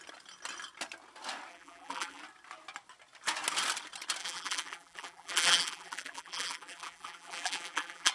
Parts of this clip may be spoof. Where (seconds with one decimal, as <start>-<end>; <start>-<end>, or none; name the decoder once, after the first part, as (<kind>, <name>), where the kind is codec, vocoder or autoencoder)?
1.5-2.2 (vocoder, BigVGAN v2); 4.2-8.1